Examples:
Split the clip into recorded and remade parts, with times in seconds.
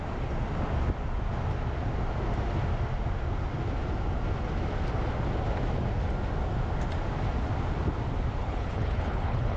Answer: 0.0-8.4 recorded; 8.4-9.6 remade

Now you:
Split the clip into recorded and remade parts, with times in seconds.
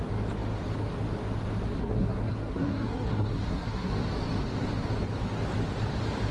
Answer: 0.0-1.8 recorded; 1.8-3.9 remade; 3.9-6.3 recorded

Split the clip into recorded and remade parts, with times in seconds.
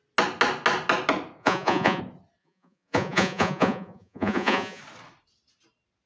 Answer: 0.0-1.4 recorded; 1.4-2.0 remade; 2.0-2.4 recorded; 2.4-4.8 remade; 4.8-6.1 recorded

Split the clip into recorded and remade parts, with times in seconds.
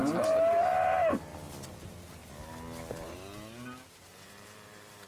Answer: 0.0-1.3 remade; 1.3-1.8 recorded; 1.8-2.2 remade; 2.2-3.9 recorded; 3.9-5.1 remade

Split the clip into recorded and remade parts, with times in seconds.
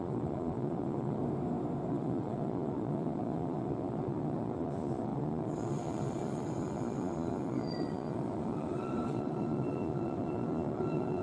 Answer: 0.0-1.2 remade; 1.2-1.9 recorded; 1.9-11.2 remade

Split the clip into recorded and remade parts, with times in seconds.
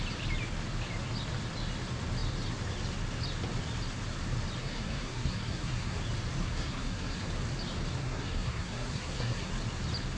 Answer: 0.0-4.6 recorded; 4.6-6.0 remade; 6.0-6.4 recorded; 6.4-7.3 remade; 7.3-8.0 recorded; 8.0-9.5 remade; 9.5-10.2 recorded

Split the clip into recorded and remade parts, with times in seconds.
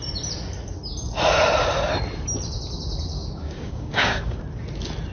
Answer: 0.0-3.1 recorded; 3.1-4.4 remade; 4.4-5.1 recorded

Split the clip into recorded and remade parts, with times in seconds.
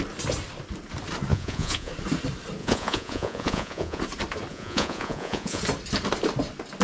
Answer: 0.0-1.3 recorded; 1.3-1.9 remade; 1.9-2.6 recorded; 2.6-4.0 remade; 4.0-4.5 recorded; 4.5-5.6 remade; 5.6-6.8 recorded